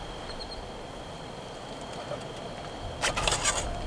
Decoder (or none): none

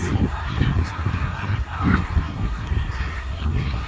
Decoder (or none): codec, SNAC